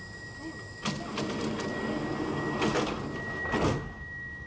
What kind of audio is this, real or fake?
real